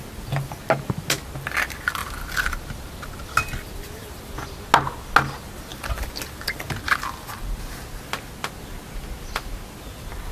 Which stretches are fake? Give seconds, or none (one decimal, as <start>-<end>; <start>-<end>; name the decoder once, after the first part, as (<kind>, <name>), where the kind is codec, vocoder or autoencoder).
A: none

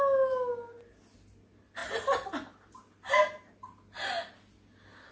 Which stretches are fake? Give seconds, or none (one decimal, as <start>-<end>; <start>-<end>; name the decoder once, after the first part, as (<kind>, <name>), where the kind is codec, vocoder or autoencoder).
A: none